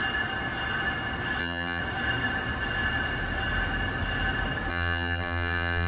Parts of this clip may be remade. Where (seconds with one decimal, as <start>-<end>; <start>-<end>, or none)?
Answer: 1.4-1.8; 4.7-5.9